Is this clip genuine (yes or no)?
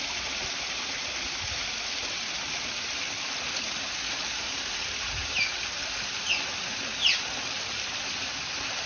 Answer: yes